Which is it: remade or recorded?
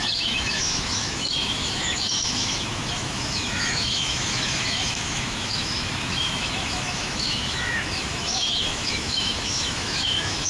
remade